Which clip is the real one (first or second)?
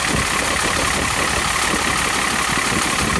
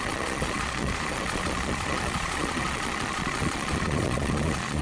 first